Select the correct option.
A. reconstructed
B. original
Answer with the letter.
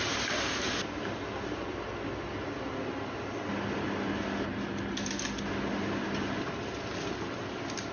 B